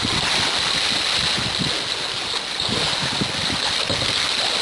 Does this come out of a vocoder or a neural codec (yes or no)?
no